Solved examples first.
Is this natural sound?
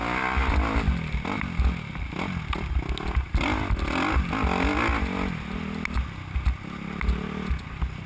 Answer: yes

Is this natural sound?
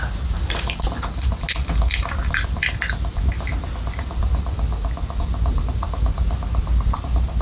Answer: yes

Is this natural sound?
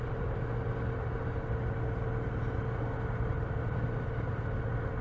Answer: yes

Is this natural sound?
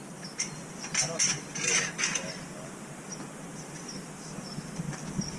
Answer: yes